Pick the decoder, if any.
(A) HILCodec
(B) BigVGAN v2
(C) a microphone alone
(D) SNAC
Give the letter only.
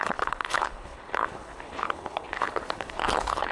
A